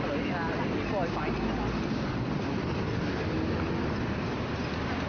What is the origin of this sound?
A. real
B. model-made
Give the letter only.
A